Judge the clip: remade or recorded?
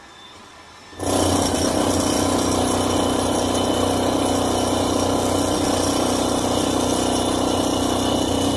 recorded